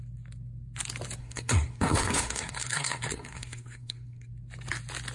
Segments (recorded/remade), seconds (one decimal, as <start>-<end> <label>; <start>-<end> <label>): 0.0-1.2 recorded; 1.2-4.3 remade; 4.3-5.1 recorded